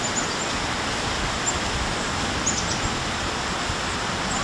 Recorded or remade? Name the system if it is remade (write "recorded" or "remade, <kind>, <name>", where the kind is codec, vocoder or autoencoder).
recorded